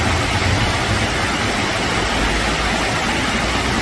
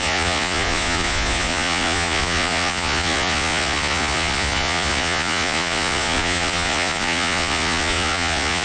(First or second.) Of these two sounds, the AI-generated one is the second